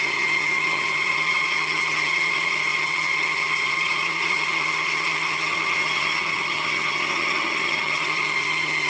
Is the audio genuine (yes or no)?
no